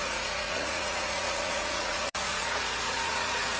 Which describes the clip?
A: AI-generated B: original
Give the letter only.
A